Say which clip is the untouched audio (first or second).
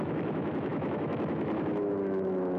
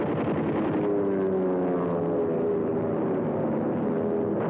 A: second